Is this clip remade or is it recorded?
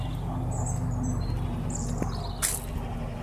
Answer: recorded